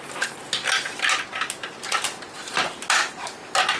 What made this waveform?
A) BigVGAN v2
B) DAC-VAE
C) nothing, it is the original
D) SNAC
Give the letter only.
C